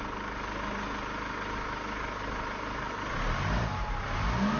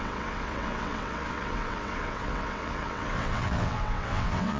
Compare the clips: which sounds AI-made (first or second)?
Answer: second